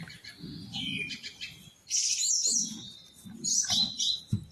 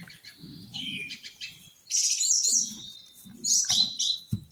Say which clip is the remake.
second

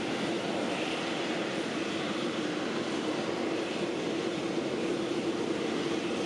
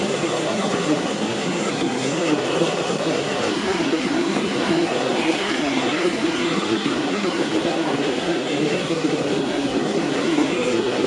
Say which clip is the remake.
second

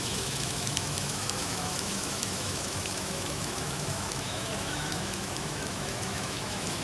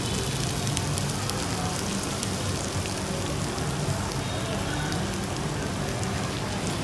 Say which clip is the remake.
first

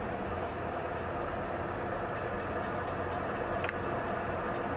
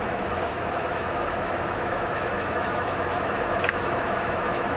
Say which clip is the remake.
second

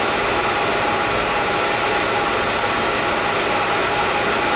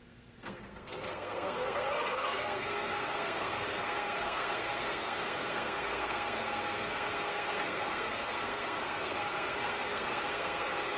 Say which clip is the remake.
second